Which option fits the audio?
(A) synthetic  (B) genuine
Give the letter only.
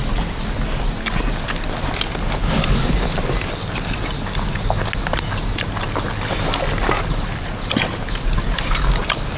B